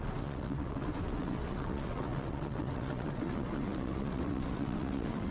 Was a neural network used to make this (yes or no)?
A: yes